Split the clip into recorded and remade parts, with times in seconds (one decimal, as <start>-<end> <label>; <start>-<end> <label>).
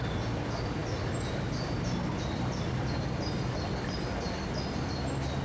0.0-5.4 recorded